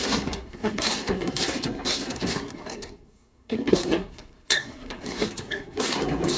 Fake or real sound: fake